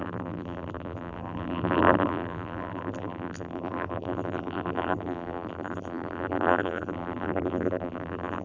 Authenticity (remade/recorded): remade